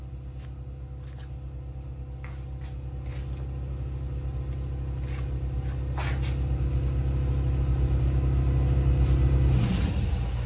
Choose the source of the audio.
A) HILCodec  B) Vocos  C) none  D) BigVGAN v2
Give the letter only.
C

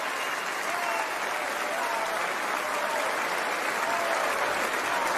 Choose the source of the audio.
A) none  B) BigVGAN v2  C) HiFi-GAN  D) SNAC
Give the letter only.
A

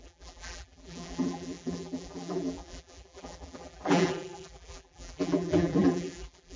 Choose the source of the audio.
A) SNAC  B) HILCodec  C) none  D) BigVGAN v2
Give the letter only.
D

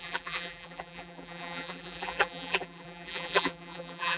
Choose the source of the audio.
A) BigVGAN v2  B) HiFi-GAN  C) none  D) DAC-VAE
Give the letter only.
A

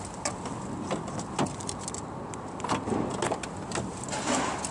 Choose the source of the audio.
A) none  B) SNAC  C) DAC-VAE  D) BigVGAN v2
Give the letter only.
A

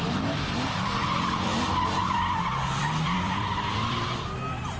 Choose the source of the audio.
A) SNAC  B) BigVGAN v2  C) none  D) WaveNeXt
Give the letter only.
B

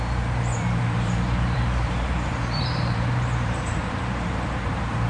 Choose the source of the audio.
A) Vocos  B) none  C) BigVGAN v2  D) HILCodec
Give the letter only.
C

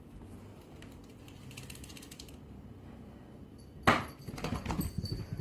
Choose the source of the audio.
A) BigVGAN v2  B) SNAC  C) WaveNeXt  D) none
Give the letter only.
D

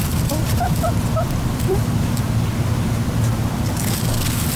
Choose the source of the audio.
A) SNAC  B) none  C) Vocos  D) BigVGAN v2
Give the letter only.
D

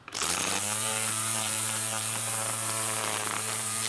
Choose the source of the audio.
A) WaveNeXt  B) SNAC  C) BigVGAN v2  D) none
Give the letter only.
C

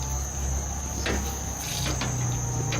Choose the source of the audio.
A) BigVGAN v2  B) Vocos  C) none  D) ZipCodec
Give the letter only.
C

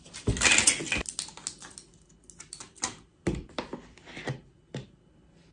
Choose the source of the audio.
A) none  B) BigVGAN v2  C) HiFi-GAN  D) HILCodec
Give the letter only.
A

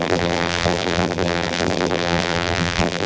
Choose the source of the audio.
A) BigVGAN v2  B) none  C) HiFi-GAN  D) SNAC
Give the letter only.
A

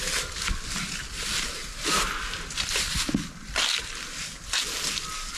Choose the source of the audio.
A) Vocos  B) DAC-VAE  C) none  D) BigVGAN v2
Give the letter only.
C